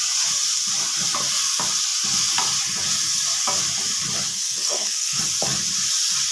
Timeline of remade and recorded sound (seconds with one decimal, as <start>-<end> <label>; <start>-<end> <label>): 0.0-4.3 recorded; 4.3-5.2 remade; 5.2-6.3 recorded